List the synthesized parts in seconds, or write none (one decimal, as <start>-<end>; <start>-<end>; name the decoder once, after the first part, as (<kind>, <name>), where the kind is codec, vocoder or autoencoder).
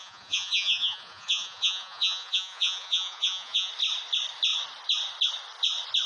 0.0-3.7 (vocoder, Vocos)